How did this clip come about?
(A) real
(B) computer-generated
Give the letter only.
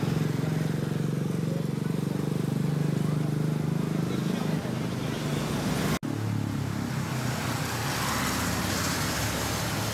A